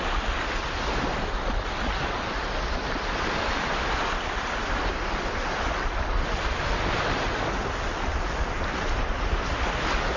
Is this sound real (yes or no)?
yes